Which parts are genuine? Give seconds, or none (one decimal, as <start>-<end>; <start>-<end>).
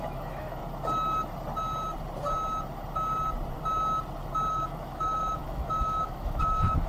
0.6-4.5